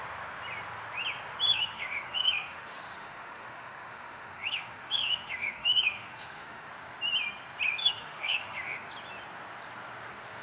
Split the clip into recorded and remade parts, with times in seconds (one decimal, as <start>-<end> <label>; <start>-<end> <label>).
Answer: 0.0-1.5 recorded; 1.5-6.7 remade; 6.7-7.8 recorded; 7.8-8.9 remade; 8.9-10.4 recorded